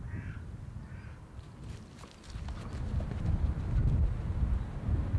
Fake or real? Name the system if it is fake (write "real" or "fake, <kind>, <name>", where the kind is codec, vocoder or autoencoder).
real